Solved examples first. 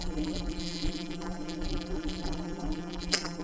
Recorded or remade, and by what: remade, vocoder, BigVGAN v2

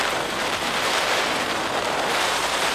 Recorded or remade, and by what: remade, vocoder, BigVGAN v2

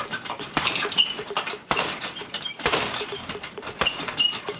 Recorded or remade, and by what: remade, vocoder, BigVGAN v2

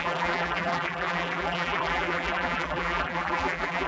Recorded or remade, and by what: remade, vocoder, BigVGAN v2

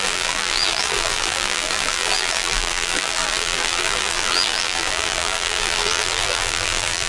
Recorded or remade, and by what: remade, vocoder, BigVGAN v2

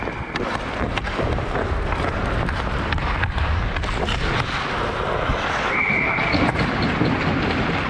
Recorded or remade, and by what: recorded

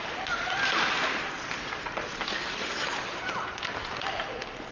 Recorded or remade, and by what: recorded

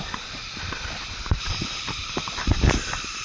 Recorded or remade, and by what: remade, vocoder, BigVGAN v2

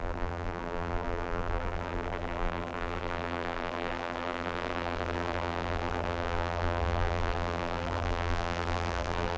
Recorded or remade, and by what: remade, vocoder, BigVGAN v2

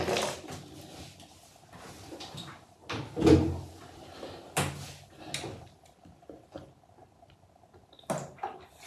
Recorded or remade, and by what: recorded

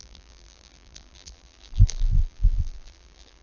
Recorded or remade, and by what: remade, vocoder, BigVGAN v2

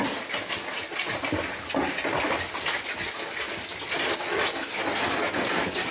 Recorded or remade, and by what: recorded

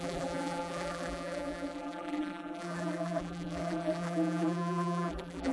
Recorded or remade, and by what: remade, vocoder, BigVGAN v2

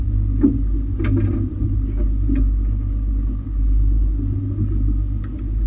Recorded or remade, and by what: recorded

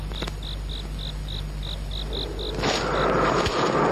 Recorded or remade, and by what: recorded